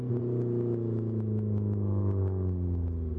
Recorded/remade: recorded